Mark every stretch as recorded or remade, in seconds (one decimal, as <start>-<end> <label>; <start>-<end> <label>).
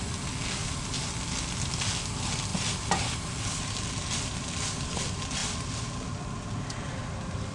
0.0-7.5 recorded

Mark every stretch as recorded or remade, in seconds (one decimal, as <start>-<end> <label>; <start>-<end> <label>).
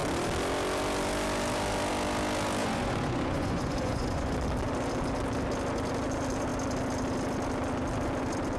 0.0-2.6 recorded; 2.6-4.3 remade; 4.3-8.6 recorded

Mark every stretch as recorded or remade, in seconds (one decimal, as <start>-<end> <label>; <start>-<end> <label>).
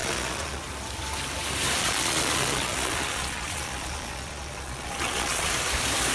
0.0-0.6 remade; 0.6-1.8 recorded; 1.8-5.5 remade; 5.5-6.1 recorded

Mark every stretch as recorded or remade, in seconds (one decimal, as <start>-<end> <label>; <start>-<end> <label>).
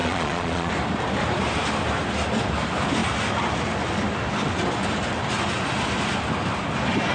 0.0-0.7 remade; 0.7-7.1 recorded